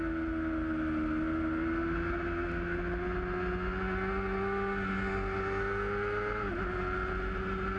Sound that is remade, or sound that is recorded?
recorded